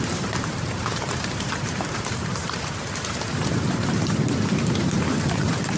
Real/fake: fake